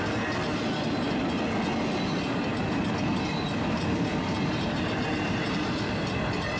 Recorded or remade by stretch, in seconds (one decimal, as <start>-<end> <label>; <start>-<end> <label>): 0.0-2.5 recorded; 2.5-6.6 remade